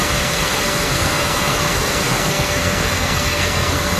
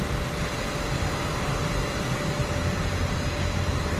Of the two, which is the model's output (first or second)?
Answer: first